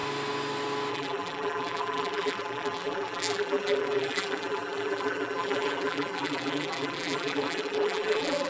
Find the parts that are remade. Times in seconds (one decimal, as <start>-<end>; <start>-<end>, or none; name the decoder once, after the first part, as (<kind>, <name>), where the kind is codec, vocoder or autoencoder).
0.9-8.5 (vocoder, BigVGAN v2)